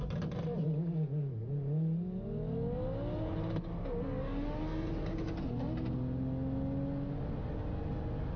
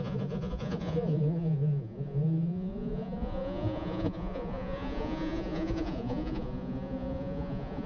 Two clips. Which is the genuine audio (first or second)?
first